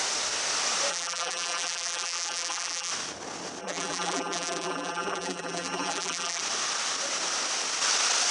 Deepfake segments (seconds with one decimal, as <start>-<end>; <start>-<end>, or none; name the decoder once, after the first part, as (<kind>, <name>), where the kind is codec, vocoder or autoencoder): 0.9-2.9 (vocoder, BigVGAN v2); 3.6-6.4